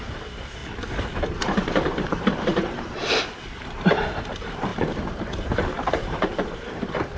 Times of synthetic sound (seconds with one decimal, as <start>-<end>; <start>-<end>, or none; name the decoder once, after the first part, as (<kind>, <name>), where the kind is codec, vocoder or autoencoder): 0.0-0.6 (vocoder, BigVGAN v2); 1.4-7.2